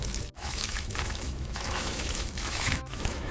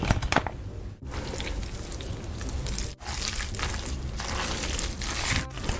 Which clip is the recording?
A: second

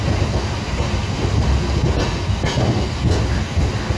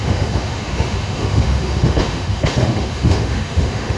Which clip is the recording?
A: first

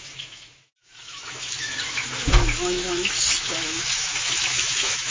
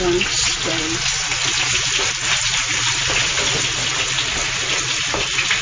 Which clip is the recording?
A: second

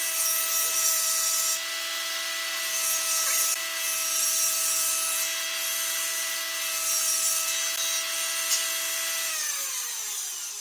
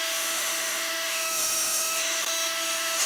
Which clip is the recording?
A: first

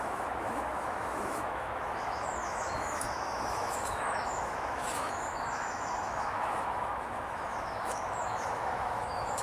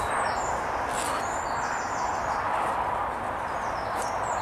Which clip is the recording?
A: second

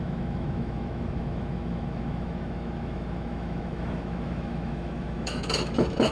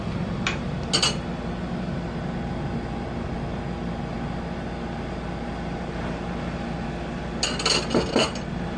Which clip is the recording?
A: second